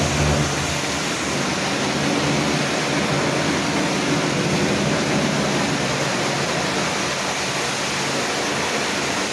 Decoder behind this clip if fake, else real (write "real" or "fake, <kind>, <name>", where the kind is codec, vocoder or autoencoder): real